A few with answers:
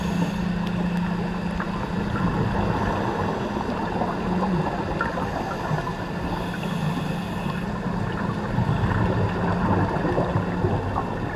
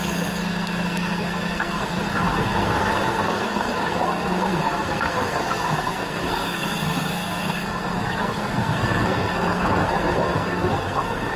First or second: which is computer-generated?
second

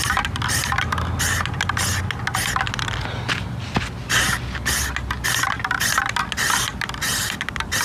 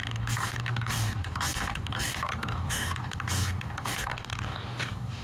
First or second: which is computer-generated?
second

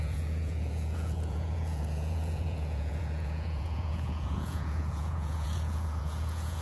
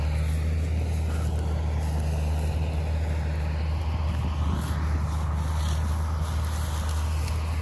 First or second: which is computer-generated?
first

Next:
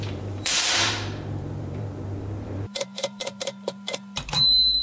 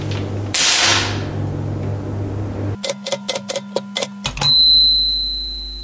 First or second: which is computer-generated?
first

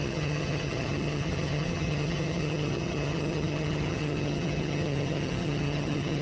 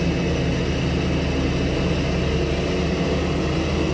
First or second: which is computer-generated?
first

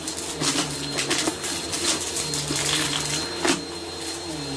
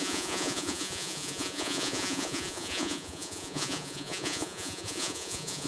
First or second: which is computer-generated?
second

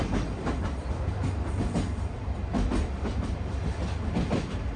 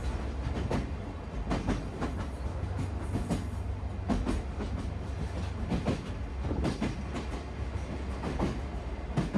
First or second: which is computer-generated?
first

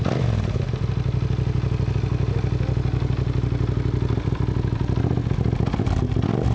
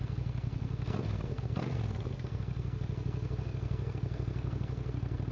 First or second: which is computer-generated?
second